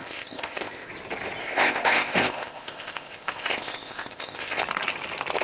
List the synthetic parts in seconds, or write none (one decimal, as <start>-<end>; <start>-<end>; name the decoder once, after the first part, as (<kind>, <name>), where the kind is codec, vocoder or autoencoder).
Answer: 0.0-0.9 (codec, ZipCodec); 1.4-4.6

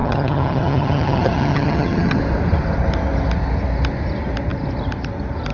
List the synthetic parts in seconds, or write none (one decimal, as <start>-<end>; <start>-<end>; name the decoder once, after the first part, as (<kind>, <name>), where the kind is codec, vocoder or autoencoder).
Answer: 0.0-2.2 (vocoder, HiFi-GAN)

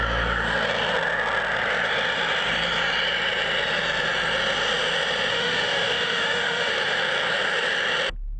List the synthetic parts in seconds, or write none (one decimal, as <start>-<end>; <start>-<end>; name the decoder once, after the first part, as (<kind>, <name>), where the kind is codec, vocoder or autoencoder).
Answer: 5.3-6.7 (autoencoder, DAC-VAE)

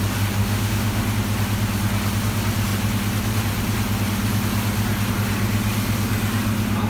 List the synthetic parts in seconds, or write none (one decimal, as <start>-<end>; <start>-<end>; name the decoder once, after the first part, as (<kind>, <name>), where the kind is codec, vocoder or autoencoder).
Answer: 0.4-1.0 (autoencoder, DAC-VAE)

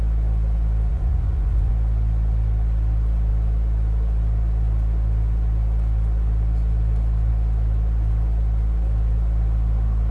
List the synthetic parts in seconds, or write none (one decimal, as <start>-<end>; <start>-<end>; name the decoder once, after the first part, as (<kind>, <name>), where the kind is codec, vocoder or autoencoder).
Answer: 0.9-1.7 (vocoder, Vocos)

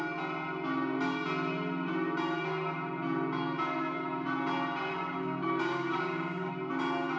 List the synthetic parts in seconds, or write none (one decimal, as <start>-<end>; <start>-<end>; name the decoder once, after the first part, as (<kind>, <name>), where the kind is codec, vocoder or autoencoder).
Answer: 4.9-6.5 (codec, DAC)

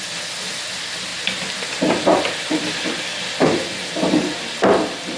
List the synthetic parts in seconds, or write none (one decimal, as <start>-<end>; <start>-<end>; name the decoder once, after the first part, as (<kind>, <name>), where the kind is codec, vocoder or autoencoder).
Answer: none

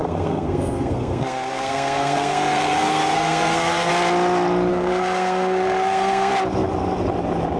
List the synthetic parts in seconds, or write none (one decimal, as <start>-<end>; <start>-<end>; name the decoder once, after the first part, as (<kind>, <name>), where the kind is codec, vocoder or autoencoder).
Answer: 0.0-3.9 (codec, SNAC); 4.7-6.3